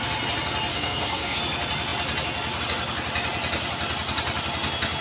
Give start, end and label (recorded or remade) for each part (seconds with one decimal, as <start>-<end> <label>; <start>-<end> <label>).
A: 0.0-0.7 recorded; 0.7-1.4 remade; 1.4-5.0 recorded